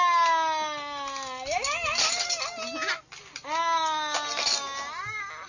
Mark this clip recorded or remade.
recorded